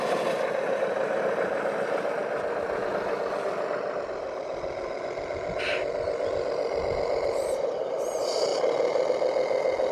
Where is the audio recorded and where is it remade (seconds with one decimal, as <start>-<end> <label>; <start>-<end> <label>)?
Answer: 0.0-8.5 recorded; 8.5-9.1 remade; 9.1-9.9 recorded